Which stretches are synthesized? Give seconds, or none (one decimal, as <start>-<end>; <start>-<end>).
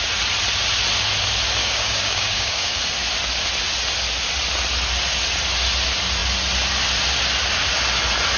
1.6-2.8